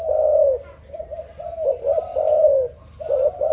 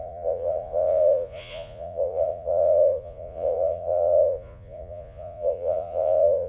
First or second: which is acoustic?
first